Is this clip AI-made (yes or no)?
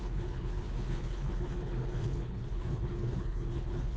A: yes